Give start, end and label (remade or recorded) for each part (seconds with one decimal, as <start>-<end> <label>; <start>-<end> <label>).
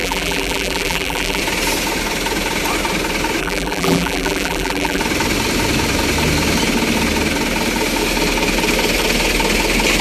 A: 0.0-1.4 remade; 1.4-3.4 recorded; 3.4-5.0 remade; 5.0-10.0 recorded